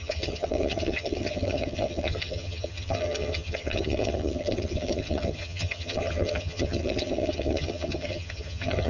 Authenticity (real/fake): fake